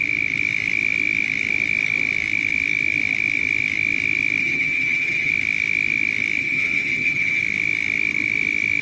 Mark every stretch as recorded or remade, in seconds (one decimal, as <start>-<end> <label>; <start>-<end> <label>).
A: 0.0-4.4 recorded; 4.4-5.3 remade; 5.3-6.4 recorded; 6.4-7.4 remade; 7.4-8.8 recorded